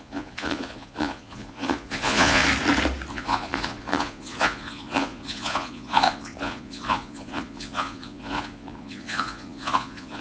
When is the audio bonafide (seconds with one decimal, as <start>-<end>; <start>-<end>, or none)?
2.4-3.1